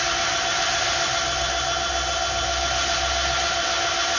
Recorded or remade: recorded